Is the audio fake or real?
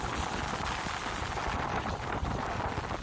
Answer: real